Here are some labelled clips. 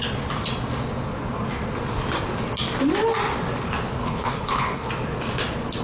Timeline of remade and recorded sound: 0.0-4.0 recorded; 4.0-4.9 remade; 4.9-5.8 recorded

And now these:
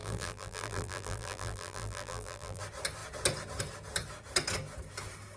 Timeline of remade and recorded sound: 0.0-2.6 remade; 2.6-5.4 recorded

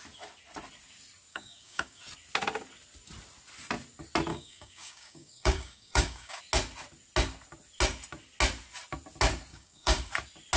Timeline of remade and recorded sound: 0.0-1.3 recorded; 1.3-2.0 remade; 2.0-4.3 recorded; 4.3-6.4 remade; 6.4-9.5 recorded; 9.5-10.1 remade; 10.1-10.6 recorded

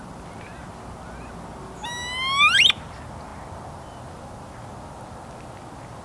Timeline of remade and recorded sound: 0.0-6.0 recorded

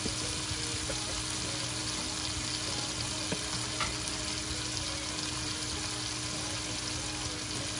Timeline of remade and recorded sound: 0.0-7.8 recorded

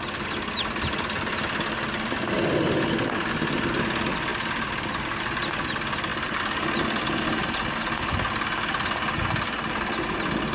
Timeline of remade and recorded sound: 0.0-10.5 recorded

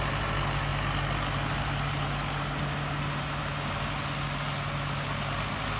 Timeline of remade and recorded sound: 0.0-5.8 recorded

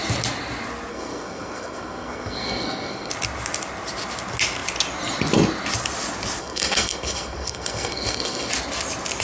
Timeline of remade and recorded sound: 0.0-0.9 recorded; 0.9-3.1 remade; 3.1-6.4 recorded; 6.4-8.5 remade; 8.5-9.2 recorded